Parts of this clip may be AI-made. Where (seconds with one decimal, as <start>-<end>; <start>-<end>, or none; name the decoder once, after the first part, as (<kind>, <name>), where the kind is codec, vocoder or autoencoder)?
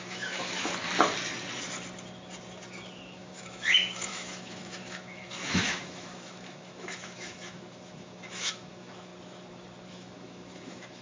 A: 0.0-0.7 (autoencoder, DAC-VAE); 3.2-9.1; 9.9-11.0